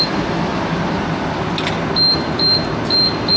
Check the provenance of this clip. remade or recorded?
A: recorded